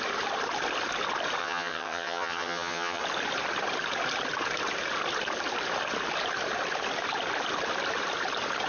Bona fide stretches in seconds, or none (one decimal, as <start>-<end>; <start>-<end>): 0.0-1.4; 3.0-8.7